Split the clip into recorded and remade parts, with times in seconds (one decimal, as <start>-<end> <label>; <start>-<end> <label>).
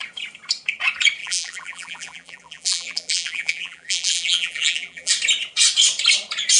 0.0-1.2 recorded; 1.2-5.1 remade; 5.1-6.6 recorded